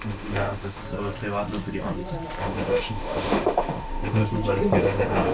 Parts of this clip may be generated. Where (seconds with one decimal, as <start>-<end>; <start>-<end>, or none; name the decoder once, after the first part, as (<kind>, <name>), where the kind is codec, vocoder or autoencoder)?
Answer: 0.0-0.8 (autoencoder, DAC-VAE); 2.4-4.2; 4.8-5.3